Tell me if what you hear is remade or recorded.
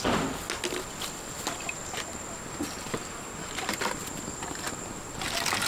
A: recorded